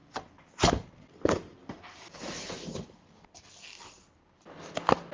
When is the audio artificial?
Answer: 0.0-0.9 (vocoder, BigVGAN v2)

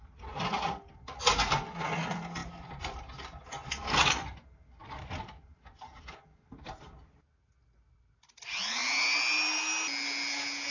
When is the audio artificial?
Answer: 2.4-3.4 (vocoder, BigVGAN v2); 4.8-5.4

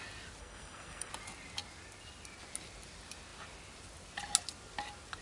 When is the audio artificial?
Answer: 0.4-1.1 (codec, SNAC)

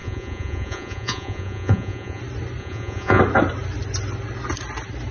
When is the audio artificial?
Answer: 0.0-2.2 (vocoder, Vocos); 2.6-3.2

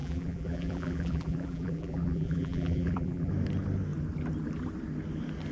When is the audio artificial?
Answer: 0.0-3.3 (vocoder, BigVGAN v2)

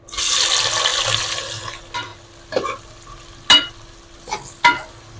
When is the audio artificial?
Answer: none